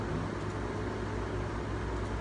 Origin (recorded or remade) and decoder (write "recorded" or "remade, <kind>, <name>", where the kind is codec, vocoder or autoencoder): recorded